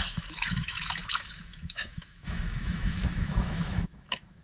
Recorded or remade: remade